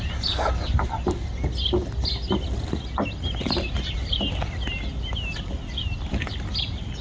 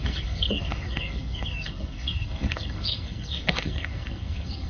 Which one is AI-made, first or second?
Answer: second